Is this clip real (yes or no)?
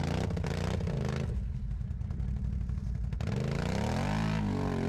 yes